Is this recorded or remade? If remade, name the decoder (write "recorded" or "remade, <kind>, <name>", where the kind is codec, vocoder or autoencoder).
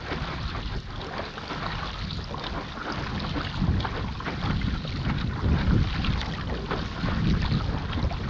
recorded